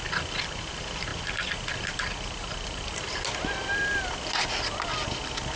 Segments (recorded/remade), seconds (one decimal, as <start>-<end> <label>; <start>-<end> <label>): 0.0-1.1 recorded; 1.1-3.1 remade; 3.1-5.6 recorded